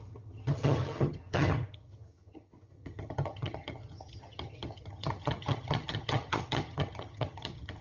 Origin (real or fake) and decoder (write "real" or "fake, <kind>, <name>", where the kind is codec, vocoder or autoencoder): fake, vocoder, HiFi-GAN